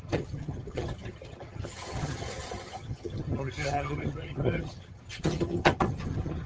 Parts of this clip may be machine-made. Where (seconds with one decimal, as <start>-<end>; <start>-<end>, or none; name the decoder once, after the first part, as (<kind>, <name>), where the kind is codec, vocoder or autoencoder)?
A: 0.0-6.5 (vocoder, HiFi-GAN)